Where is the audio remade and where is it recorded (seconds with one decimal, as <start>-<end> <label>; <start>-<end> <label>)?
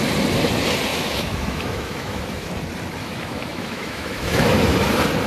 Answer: 0.0-0.9 recorded; 0.9-2.5 remade; 2.5-3.0 recorded; 3.0-4.5 remade; 4.5-5.3 recorded